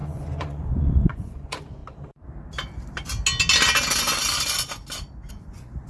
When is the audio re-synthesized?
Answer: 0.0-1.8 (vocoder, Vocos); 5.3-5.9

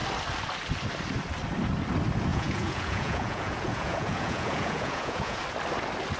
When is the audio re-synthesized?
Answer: 2.3-5.4 (vocoder, Vocos)